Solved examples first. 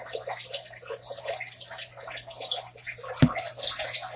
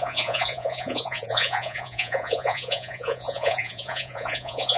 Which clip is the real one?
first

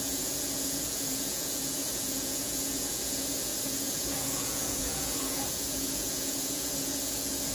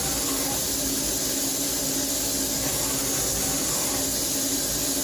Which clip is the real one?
second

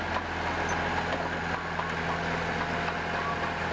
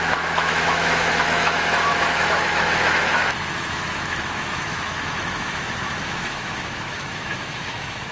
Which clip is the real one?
first